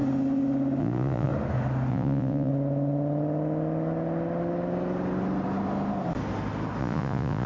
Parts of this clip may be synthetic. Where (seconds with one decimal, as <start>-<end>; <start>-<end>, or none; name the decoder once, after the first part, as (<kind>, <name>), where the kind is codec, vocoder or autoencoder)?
0.8-1.3 (vocoder, Vocos); 1.9-2.5; 6.8-7.5